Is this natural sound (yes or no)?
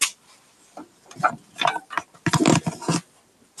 yes